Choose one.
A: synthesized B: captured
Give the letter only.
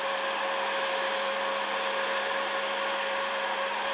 B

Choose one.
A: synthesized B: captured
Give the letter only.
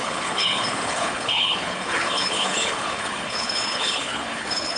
A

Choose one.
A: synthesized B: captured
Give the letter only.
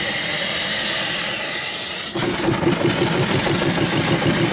B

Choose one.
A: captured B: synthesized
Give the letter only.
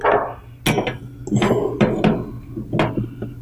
A